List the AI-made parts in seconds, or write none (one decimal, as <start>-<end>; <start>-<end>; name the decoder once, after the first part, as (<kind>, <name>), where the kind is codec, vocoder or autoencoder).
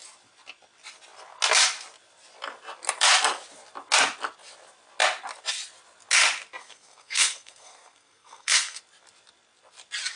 6.6-8.8 (codec, SNAC)